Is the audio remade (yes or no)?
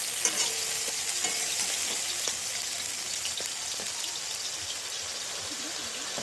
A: no